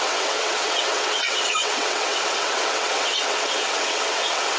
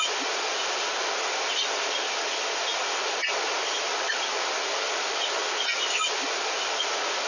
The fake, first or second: first